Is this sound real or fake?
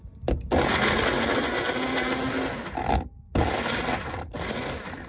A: real